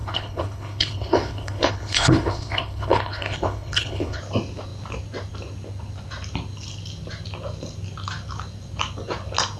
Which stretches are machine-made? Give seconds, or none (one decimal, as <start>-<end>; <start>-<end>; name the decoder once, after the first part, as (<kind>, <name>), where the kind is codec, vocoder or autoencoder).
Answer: 0.0-4.2 (codec, HILCodec)